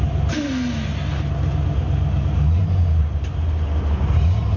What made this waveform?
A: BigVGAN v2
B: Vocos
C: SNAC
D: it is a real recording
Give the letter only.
D